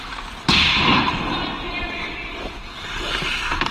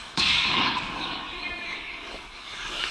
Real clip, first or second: first